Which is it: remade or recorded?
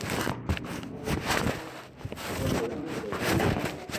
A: recorded